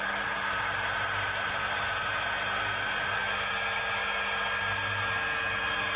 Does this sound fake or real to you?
real